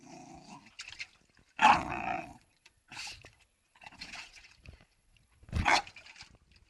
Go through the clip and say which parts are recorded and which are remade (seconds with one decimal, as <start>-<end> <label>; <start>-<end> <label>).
0.0-1.8 recorded; 1.8-5.8 remade; 5.8-6.7 recorded